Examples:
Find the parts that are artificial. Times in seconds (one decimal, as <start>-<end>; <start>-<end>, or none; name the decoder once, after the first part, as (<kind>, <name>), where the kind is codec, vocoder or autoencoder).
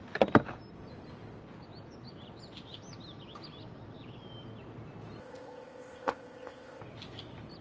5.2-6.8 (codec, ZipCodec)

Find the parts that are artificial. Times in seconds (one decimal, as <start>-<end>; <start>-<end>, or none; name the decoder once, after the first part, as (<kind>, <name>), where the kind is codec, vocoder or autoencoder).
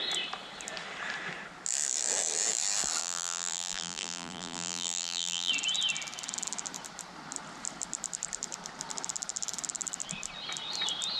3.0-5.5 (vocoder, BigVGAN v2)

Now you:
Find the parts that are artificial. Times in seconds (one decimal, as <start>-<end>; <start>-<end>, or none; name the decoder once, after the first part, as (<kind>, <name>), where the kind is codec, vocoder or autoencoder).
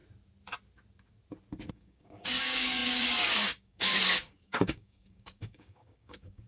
1.7-6.5 (codec, DAC)